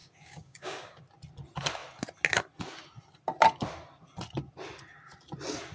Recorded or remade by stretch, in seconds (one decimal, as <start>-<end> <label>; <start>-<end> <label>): 0.0-1.0 remade; 1.0-5.7 recorded